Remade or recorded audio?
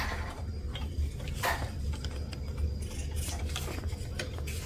recorded